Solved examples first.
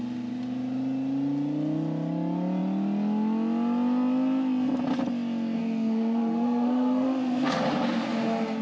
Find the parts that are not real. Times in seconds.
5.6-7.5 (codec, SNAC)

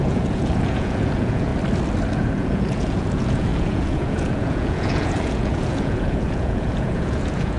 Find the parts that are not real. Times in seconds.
0.0-1.5 (vocoder, Vocos); 2.1-7.6

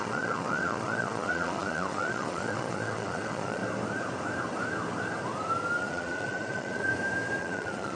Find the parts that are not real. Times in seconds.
0.0-3.6 (vocoder, Vocos); 5.8-6.9; 7.4-8.0